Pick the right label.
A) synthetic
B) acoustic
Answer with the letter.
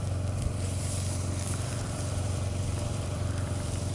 A